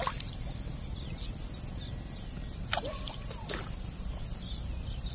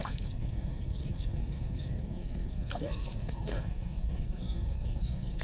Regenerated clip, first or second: second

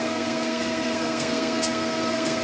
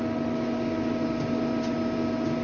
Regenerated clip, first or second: first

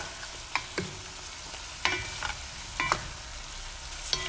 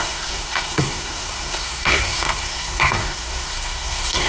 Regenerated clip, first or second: second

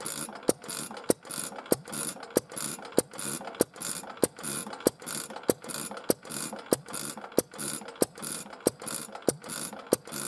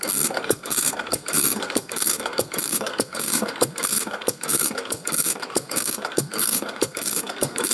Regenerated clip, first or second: second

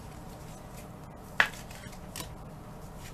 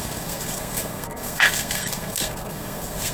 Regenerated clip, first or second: second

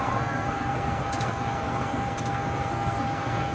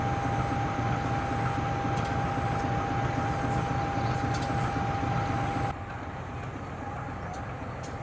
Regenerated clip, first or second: first